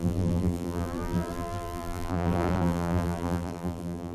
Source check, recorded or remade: remade